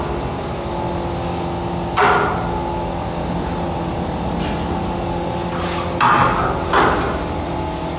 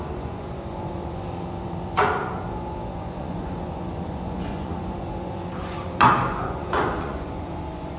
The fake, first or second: second